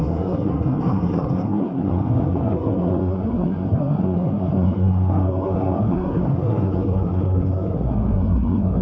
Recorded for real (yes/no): no